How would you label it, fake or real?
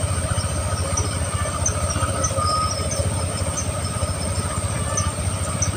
real